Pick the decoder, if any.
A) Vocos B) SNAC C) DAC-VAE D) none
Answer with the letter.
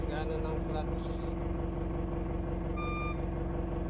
D